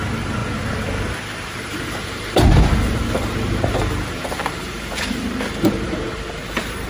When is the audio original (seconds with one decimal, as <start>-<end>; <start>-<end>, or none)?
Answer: 0.4-1.2